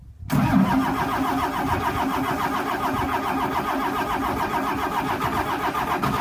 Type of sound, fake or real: real